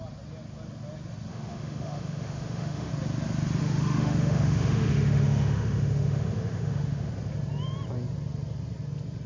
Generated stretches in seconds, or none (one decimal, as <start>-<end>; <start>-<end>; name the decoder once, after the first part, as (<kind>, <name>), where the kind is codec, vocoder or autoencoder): 1.3-2.9 (autoencoder, DAC-VAE); 3.6-7.1